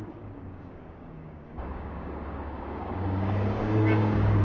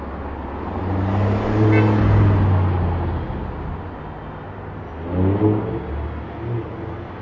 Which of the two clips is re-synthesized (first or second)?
first